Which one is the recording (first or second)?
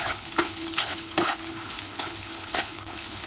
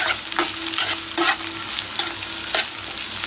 second